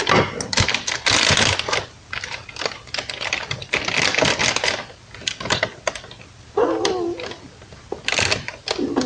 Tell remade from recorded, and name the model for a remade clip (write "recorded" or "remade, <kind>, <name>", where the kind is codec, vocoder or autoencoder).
recorded